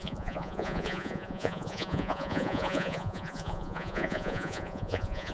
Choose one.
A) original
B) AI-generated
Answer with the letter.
B